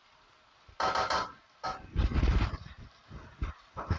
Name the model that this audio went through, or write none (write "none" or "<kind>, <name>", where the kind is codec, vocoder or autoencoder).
none